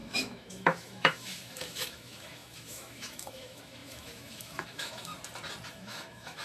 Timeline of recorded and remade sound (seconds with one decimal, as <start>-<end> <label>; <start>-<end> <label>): 0.0-5.1 remade; 5.1-5.7 recorded; 5.7-6.4 remade